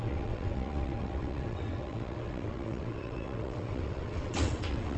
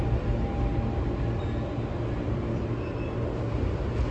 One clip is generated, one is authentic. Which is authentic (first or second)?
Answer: second